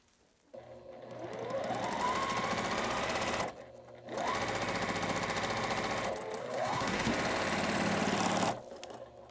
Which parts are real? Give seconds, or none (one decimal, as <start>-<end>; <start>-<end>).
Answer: 0.0-6.4; 7.1-9.3